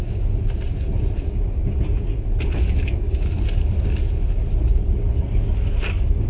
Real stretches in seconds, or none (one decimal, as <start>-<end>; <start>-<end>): 0.0-6.3